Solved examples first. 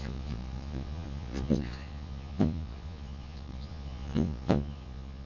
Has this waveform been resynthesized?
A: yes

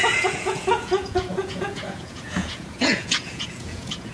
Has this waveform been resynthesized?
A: yes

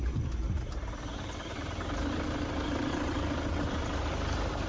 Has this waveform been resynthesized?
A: no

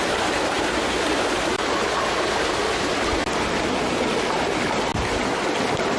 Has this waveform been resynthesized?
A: no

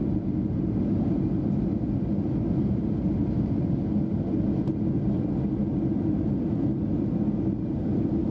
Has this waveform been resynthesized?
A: no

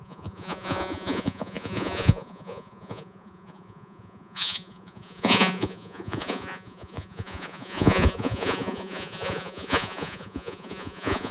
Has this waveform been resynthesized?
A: yes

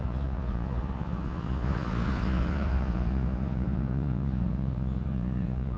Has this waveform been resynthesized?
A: yes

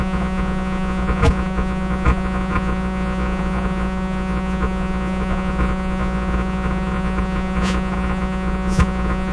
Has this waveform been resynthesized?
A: yes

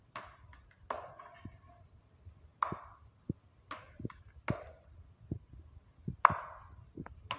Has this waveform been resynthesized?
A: no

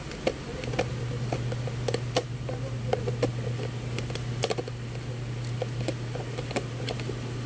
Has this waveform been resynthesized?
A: no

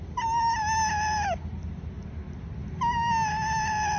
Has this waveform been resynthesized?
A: no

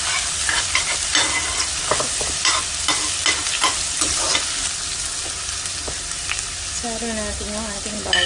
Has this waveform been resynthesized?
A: no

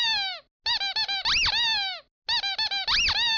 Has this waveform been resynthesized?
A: no